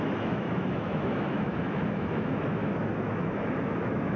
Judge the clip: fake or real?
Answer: fake